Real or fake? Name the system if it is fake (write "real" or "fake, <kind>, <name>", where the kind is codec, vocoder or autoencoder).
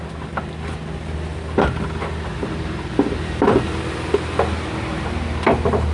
real